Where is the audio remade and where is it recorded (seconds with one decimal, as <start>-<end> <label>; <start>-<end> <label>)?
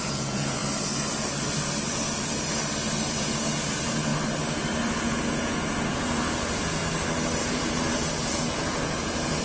0.0-0.6 remade; 0.6-3.0 recorded; 3.0-4.1 remade; 4.1-5.0 recorded; 5.0-6.8 remade; 6.8-7.4 recorded; 7.4-9.4 remade